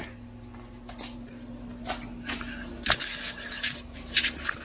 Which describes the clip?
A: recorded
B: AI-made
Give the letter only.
A